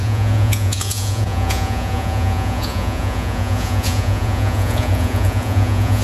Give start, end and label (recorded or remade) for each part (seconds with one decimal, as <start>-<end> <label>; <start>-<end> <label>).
0.0-6.0 remade